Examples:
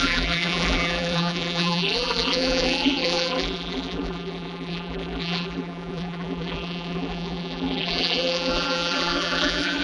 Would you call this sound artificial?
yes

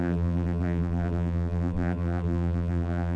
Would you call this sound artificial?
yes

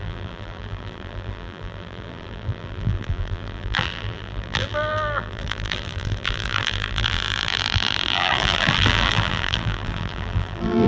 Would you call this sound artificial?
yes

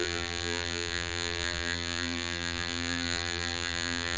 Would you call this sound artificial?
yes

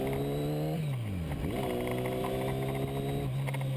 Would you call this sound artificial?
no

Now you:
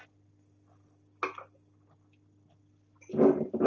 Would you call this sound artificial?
no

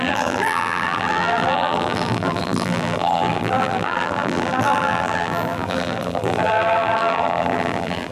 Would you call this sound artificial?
yes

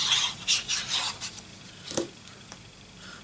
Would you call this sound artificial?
yes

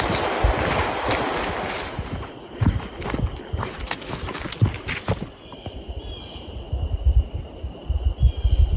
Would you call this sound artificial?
no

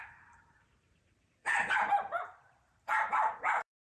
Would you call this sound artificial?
yes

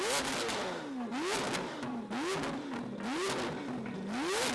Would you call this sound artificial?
no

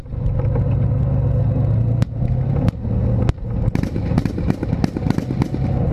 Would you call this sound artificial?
no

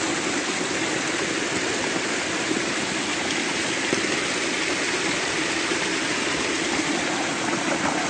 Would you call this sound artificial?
no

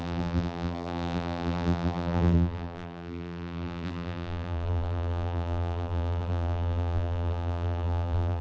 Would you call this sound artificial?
yes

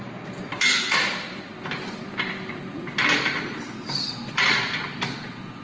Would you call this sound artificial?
no